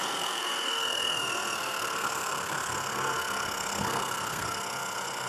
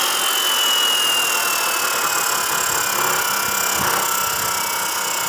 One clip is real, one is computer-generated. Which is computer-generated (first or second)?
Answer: first